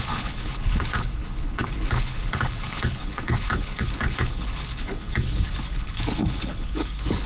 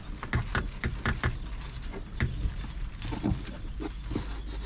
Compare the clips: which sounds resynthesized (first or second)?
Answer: first